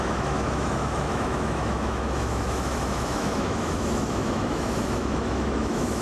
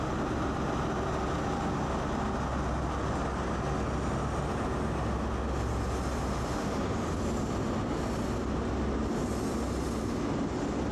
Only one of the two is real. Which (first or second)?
second